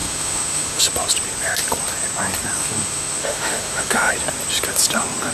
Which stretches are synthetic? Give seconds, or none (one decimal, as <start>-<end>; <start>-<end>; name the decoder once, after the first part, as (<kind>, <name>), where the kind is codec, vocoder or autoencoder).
0.0-0.8 (autoencoder, DAC-VAE); 2.6-4.1